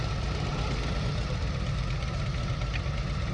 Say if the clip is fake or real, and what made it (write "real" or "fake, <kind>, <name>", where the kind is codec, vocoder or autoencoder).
real